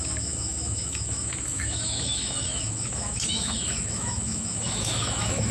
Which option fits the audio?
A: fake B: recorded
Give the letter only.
A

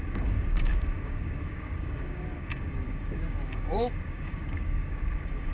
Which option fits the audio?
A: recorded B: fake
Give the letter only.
B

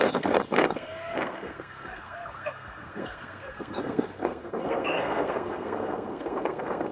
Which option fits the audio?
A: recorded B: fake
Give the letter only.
B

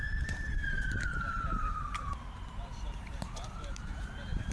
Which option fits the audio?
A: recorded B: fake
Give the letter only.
B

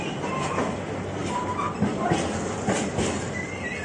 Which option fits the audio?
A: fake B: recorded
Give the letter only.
B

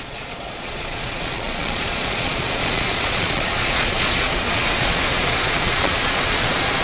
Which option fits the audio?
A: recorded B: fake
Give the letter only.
B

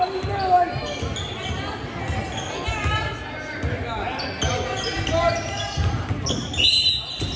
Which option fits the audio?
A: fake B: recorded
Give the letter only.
B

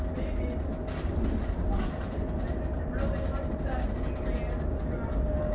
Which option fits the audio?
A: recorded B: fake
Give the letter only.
A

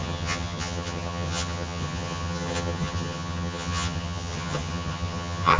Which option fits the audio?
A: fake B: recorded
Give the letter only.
A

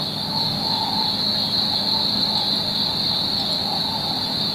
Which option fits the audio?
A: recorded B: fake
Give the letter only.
A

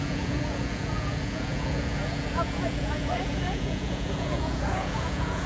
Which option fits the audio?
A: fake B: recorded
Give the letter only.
A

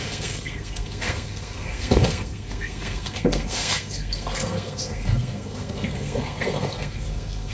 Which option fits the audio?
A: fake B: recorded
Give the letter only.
A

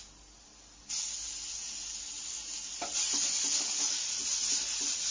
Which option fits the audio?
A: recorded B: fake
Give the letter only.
A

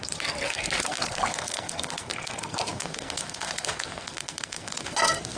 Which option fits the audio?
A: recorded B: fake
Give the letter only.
B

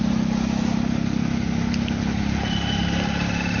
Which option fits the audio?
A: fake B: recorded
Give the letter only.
B